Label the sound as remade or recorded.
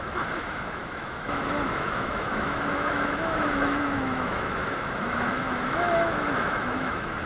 remade